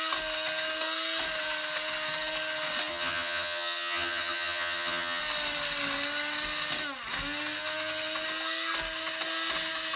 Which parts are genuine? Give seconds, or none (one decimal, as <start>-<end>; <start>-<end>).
0.0-2.9; 5.2-10.0